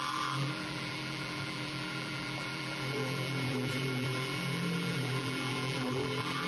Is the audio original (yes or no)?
no